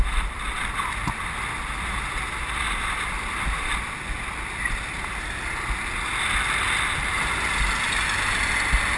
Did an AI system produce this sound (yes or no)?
no